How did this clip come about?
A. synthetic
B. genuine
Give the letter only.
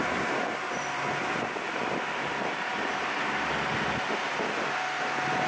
B